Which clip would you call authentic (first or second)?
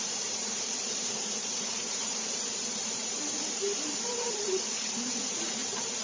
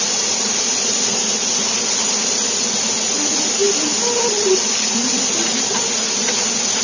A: second